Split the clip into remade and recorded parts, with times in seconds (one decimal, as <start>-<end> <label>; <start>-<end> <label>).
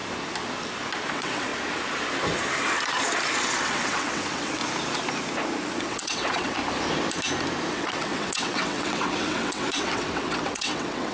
0.0-1.1 recorded; 1.1-1.5 remade; 1.5-3.6 recorded; 3.6-4.6 remade; 4.6-5.8 recorded; 5.8-6.6 remade; 6.6-7.7 recorded; 7.7-11.1 remade